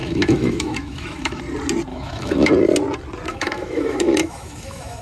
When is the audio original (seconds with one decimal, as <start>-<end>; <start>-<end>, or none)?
1.4-1.9; 2.5-3.3